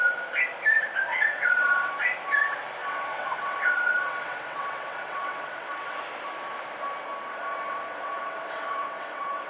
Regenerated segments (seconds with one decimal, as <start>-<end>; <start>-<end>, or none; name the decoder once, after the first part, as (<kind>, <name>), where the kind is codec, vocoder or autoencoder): 1.1-1.9 (vocoder, WaveNeXt); 2.8-6.0; 7.3-9.5